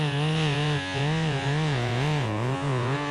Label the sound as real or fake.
fake